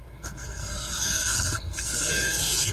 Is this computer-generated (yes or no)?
yes